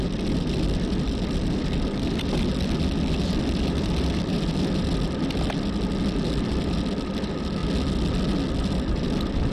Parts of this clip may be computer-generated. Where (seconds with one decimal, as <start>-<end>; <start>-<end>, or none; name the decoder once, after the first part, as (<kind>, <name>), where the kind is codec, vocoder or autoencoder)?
0.0-2.5 (vocoder, BigVGAN v2); 3.4-4.9; 6.2-7.6; 8.7-9.5